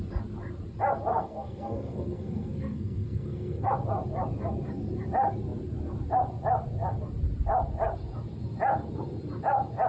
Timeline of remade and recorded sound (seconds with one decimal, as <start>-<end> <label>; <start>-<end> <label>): 0.0-1.1 recorded; 1.1-3.7 remade; 3.7-9.9 recorded